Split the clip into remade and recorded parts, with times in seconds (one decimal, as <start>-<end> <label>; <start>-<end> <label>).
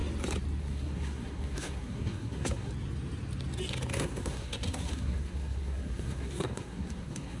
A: 0.0-0.6 recorded; 0.6-2.7 remade; 2.7-3.9 recorded; 3.9-7.4 remade